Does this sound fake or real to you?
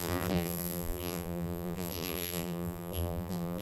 fake